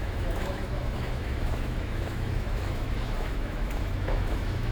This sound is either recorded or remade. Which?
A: remade